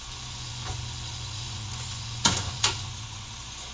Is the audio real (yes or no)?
no